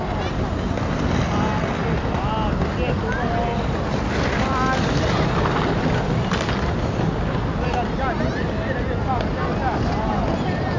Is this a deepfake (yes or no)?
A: no